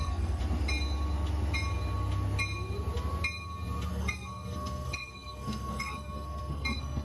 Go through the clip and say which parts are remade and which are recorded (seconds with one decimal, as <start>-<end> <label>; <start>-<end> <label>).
0.0-0.4 remade; 0.4-3.9 recorded; 3.9-7.0 remade